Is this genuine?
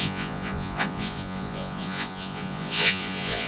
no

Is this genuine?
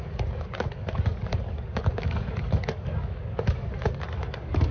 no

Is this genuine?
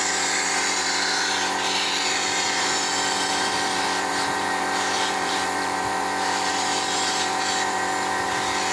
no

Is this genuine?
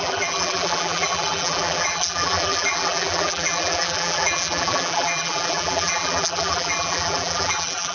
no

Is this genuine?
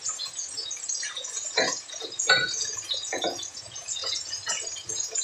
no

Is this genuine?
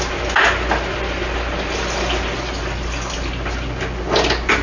yes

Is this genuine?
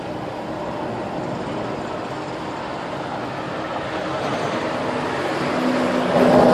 yes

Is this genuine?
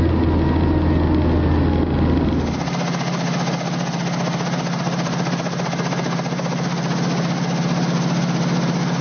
yes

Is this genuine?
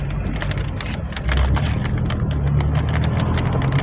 yes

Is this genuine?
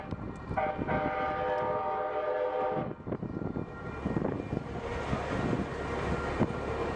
yes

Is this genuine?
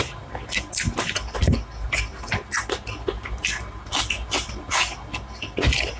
yes